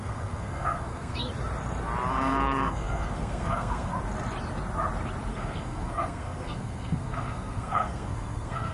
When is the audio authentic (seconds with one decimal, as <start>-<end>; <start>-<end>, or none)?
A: 1.3-2.1; 3.9-5.3